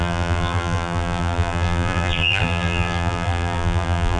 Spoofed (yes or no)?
yes